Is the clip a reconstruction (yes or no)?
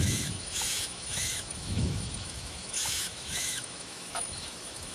yes